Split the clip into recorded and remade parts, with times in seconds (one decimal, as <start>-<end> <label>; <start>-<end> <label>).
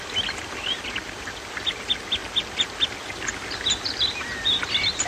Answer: 0.0-5.1 recorded